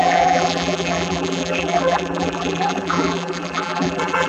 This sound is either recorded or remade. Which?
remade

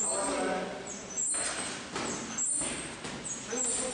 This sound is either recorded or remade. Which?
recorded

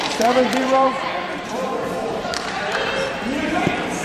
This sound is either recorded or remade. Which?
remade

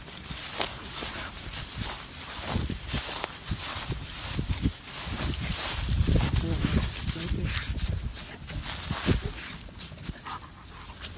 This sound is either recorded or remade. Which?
remade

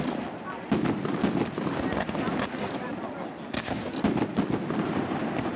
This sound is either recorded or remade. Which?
recorded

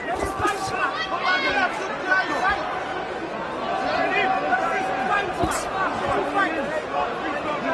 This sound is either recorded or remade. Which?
recorded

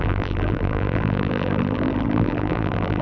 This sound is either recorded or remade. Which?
remade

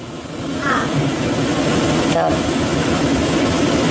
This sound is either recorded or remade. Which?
recorded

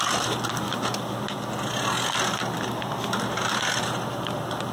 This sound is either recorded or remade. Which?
remade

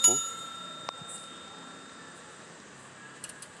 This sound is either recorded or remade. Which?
recorded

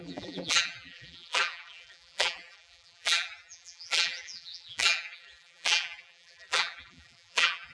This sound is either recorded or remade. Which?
remade